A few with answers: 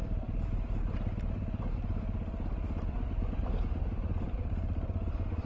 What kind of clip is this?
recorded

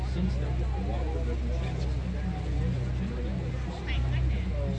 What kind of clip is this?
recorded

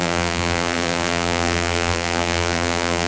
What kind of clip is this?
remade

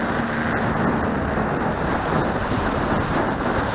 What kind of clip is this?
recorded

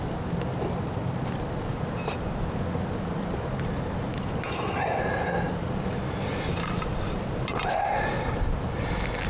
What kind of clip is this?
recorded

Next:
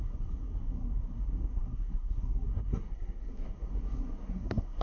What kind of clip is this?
remade